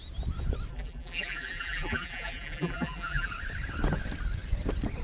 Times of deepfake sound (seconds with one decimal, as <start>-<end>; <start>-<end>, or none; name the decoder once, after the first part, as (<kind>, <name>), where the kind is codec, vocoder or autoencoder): 0.7-3.3 (vocoder, BigVGAN v2)